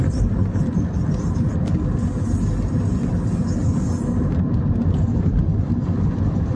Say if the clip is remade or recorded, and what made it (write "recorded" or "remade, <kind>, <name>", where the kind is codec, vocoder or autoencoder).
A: recorded